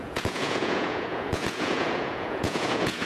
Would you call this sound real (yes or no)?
no